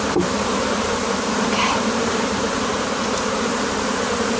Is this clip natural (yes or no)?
no